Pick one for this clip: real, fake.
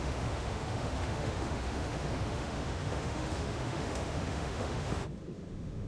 fake